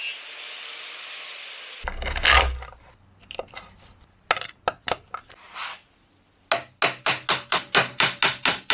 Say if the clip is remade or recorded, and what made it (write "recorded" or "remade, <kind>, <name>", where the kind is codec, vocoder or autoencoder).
recorded